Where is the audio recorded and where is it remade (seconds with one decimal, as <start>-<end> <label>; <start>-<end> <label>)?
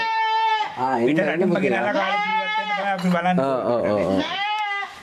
0.0-2.3 remade; 2.3-3.8 recorded; 3.8-5.0 remade